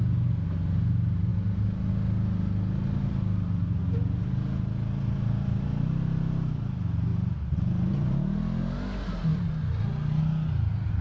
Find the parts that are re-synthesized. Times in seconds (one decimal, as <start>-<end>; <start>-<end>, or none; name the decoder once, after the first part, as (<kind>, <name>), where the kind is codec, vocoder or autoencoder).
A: none